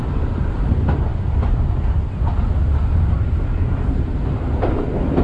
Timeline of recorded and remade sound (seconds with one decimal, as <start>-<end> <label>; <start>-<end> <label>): 0.0-5.2 recorded